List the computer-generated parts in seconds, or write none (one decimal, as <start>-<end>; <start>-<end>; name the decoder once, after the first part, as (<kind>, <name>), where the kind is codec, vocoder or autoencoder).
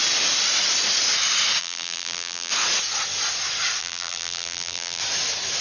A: 1.6-2.5 (vocoder, BigVGAN v2); 3.8-5.0